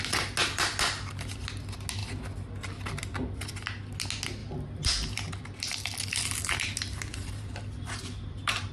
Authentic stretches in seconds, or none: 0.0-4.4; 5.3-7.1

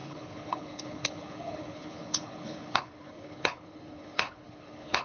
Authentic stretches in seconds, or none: none

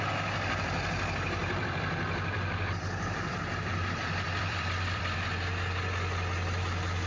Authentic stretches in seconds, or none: 0.0-1.4; 5.4-7.1

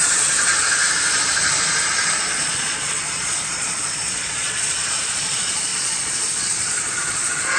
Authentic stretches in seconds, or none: 0.8-2.3